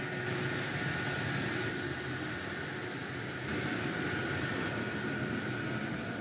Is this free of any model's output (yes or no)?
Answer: yes